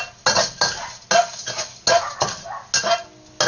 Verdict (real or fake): real